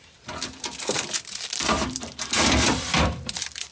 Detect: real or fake fake